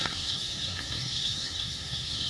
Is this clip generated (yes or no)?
yes